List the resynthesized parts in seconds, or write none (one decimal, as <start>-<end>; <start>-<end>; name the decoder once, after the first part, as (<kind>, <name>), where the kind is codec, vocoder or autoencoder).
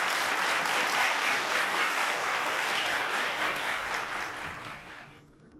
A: 1.0-3.9 (codec, DAC); 4.6-5.6